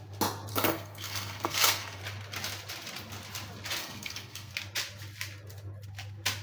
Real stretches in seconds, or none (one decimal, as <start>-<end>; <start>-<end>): 0.0-0.5; 2.0-3.8; 4.5-6.4